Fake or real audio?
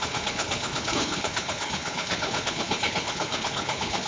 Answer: fake